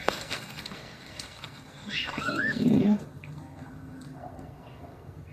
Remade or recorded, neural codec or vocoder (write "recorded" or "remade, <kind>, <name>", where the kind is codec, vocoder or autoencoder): remade, codec, SNAC